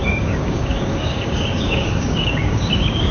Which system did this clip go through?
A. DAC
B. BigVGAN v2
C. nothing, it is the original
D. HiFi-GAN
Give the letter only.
A